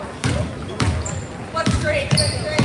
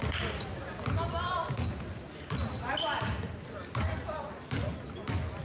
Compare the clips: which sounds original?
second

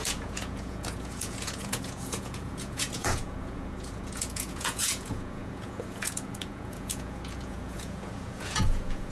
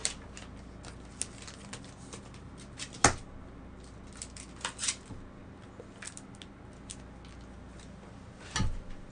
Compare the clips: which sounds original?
second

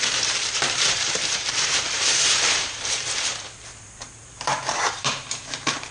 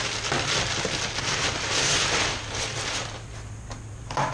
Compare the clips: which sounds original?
second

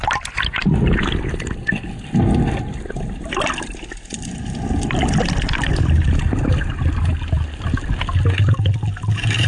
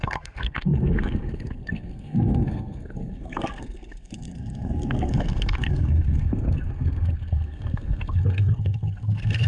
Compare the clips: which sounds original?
first